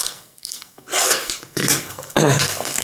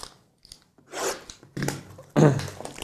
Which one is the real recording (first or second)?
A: second